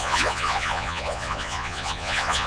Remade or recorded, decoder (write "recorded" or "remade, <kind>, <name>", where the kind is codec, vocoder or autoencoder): remade, vocoder, Vocos